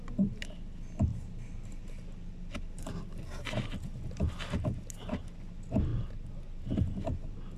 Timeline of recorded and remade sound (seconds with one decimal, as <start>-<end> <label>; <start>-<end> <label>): 0.0-7.6 recorded